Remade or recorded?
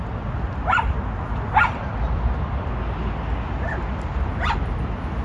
recorded